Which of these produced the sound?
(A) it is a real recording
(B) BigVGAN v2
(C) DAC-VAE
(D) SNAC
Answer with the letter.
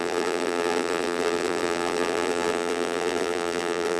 B